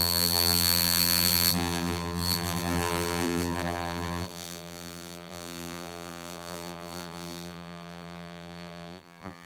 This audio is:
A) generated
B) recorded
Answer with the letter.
A